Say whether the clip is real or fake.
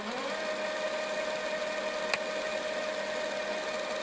real